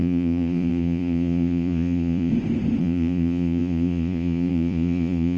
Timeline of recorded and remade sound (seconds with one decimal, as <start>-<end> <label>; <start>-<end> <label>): 0.0-2.3 remade; 2.3-2.8 recorded; 2.8-5.4 remade